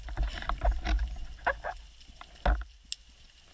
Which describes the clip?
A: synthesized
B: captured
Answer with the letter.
B